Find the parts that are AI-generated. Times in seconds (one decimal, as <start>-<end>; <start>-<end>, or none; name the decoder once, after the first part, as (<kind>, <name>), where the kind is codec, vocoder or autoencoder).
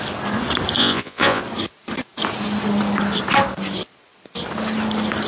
0.8-1.4 (vocoder, Vocos)